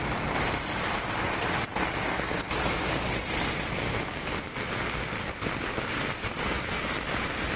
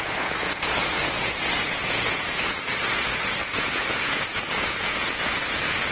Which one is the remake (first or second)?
second